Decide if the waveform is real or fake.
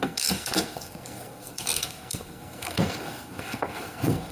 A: fake